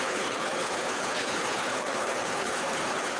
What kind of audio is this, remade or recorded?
remade